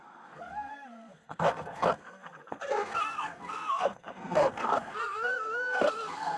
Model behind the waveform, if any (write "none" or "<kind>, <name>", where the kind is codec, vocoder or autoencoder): codec, SNAC